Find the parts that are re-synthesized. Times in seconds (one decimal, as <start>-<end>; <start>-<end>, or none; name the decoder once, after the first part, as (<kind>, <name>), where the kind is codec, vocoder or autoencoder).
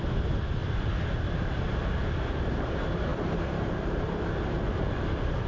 none